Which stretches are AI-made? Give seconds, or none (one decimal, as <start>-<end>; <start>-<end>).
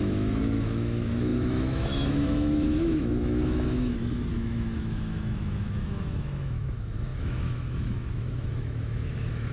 0.0-9.5